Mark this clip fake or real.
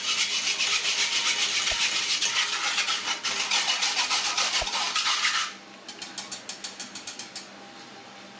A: real